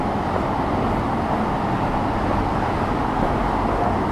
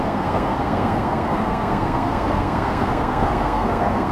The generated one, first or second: second